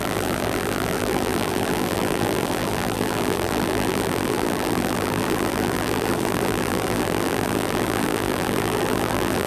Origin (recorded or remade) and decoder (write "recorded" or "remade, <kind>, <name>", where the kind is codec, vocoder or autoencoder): remade, vocoder, BigVGAN v2